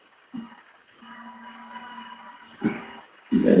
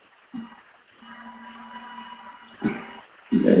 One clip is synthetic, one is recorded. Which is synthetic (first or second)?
first